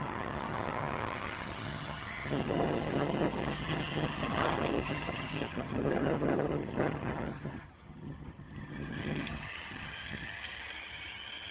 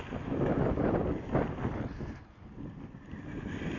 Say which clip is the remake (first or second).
first